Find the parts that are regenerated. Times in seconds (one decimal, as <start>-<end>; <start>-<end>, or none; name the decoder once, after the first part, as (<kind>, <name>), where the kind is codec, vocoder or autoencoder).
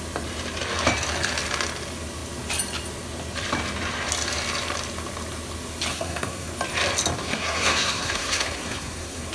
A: 5.9-6.5 (codec, SNAC); 7.2-9.3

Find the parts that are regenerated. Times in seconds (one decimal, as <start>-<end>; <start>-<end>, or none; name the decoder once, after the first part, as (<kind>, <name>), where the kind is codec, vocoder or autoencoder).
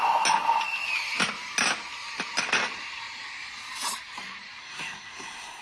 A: 4.6-5.6 (codec, SNAC)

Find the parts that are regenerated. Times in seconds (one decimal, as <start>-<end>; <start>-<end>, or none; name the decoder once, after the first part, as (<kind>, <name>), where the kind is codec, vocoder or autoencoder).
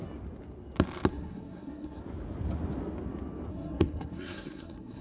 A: 1.1-2.0 (codec, SNAC); 3.5-5.0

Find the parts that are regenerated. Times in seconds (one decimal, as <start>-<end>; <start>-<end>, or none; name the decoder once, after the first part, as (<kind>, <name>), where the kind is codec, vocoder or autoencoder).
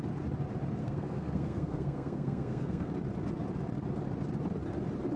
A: 0.8-2.9 (codec, SNAC)